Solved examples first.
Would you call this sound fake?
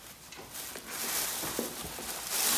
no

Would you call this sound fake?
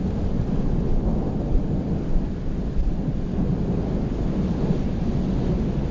no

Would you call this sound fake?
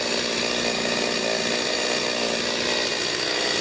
no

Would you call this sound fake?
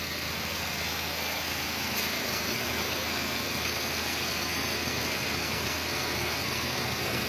yes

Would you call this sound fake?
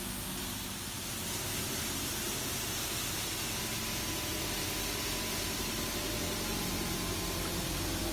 no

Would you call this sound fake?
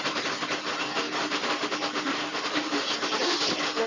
no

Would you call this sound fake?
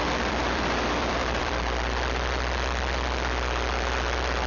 yes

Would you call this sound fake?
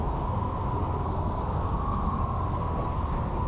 yes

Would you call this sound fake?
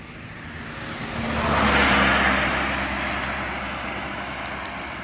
no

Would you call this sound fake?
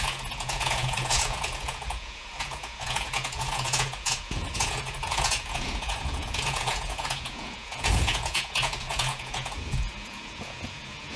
yes